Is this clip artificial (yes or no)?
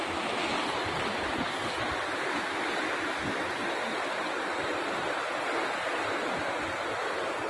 no